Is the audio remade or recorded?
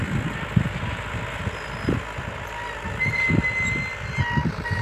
recorded